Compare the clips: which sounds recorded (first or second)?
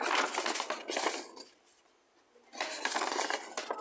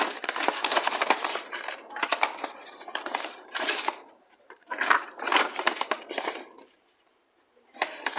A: first